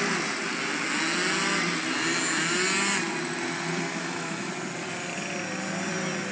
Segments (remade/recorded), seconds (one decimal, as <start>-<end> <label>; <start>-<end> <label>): 0.0-4.0 recorded; 4.0-4.5 remade; 4.5-6.3 recorded